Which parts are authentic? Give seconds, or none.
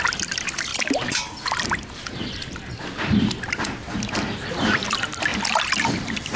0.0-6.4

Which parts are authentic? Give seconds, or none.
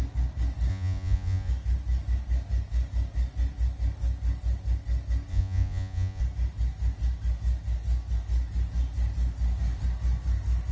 0.0-0.7; 1.5-5.3; 6.2-10.7